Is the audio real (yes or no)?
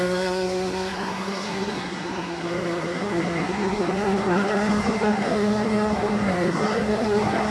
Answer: no